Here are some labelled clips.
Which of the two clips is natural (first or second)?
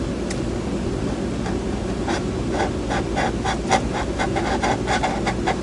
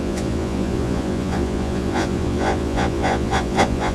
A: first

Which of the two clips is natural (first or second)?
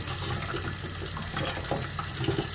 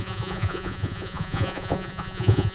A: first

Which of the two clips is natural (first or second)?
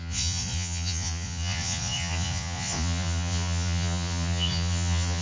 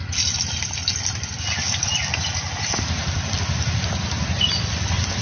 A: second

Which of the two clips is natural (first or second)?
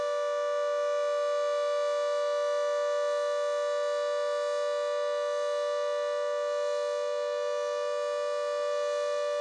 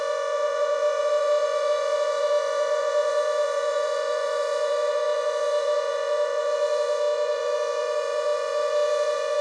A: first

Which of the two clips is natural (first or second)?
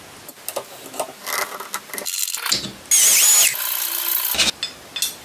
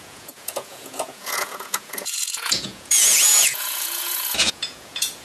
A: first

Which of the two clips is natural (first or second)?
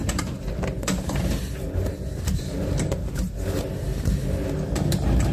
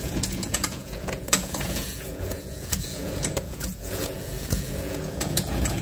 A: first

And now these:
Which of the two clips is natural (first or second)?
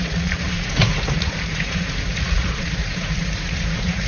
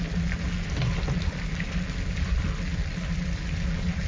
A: second